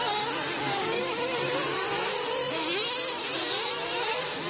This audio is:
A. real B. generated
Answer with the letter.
A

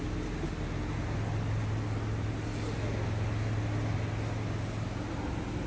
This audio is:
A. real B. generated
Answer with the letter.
A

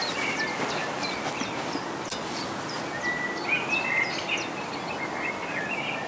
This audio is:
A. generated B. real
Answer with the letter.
B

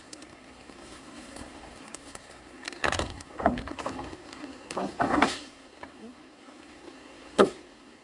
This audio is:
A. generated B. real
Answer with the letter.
A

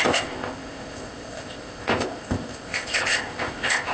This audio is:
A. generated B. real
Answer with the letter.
A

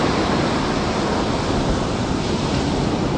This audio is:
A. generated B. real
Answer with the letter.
B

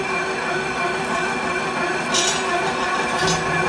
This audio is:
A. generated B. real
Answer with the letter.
B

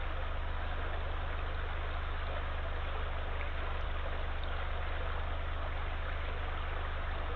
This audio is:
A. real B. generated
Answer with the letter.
A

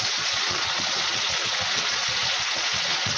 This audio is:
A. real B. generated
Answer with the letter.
B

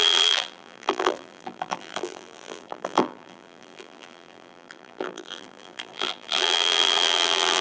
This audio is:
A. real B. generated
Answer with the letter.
B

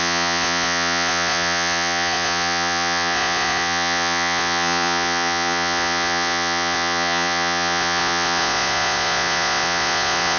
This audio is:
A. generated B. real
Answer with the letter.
A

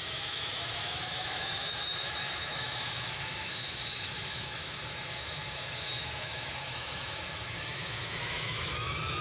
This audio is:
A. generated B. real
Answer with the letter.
A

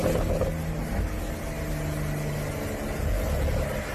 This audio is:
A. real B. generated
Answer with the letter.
A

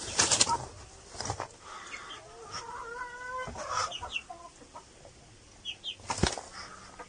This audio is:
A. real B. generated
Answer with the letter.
A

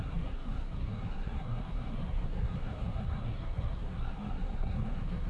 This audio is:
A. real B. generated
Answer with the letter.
B